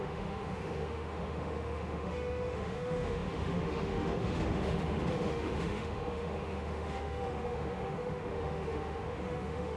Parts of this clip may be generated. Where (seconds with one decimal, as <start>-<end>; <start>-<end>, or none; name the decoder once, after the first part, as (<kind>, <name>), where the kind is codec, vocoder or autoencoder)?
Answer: 0.0-9.8 (autoencoder, DAC-VAE)